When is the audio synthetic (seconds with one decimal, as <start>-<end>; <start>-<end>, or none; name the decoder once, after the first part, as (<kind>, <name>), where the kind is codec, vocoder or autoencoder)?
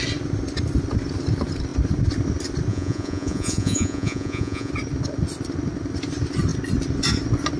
2.7-4.7 (vocoder, Vocos)